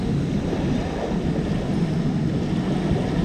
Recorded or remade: recorded